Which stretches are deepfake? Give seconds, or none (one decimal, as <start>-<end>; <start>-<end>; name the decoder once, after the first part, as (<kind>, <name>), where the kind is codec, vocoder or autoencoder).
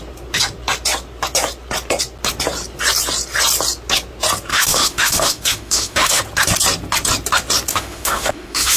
4.5-6.2 (autoencoder, DAC-VAE); 7.7-8.8